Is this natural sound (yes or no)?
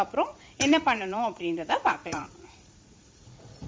no